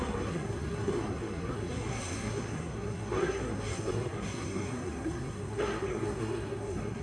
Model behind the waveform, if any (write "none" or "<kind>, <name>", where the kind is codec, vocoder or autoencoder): codec, SNAC